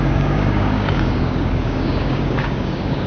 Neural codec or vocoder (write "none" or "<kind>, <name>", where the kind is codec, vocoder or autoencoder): codec, DAC